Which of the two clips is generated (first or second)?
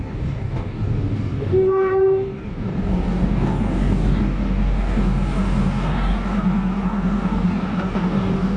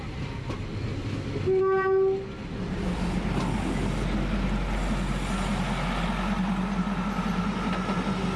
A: first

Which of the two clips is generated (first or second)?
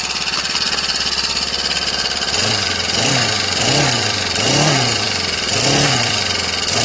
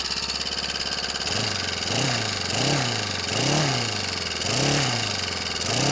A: first